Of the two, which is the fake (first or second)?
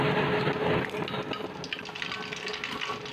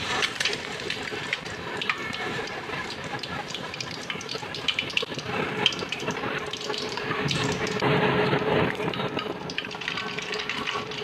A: second